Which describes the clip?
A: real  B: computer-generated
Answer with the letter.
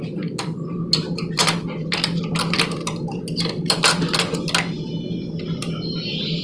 A